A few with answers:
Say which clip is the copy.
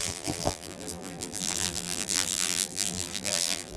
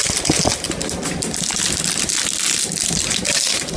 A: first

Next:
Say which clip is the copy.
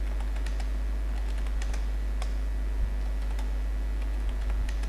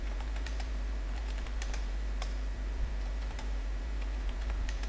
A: second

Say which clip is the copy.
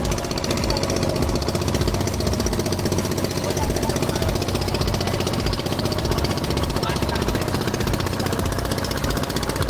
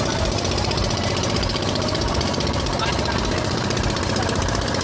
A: second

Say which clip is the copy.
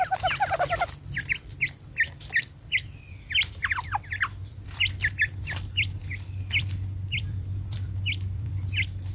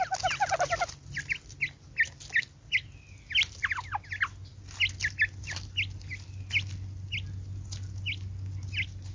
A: first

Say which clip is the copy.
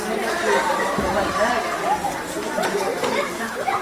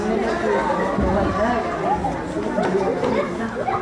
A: first